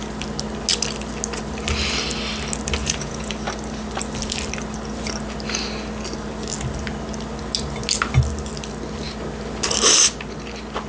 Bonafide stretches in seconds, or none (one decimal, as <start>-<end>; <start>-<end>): 0.0-2.8; 3.3-10.9